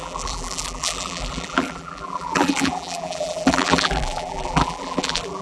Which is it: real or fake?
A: fake